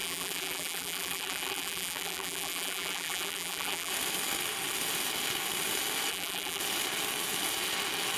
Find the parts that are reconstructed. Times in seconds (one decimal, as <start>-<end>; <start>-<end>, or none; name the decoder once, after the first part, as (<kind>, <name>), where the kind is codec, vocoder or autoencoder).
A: 0.0-3.9 (vocoder, BigVGAN v2); 6.1-6.6